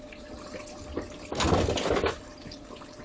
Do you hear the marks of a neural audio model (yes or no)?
no